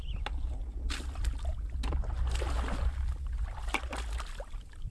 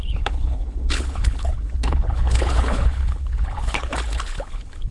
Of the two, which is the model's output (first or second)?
second